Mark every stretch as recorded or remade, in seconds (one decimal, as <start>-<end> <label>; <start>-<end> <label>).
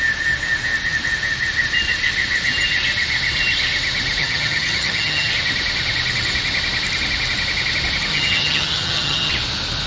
0.0-4.2 recorded; 4.2-5.3 remade; 5.3-8.1 recorded; 8.1-9.3 remade; 9.3-9.9 recorded